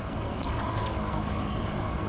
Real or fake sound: fake